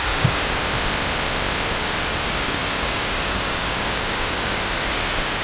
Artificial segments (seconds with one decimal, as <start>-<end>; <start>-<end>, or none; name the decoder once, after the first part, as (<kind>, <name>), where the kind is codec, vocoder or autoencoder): 0.0-0.6 (codec, DAC); 1.7-5.4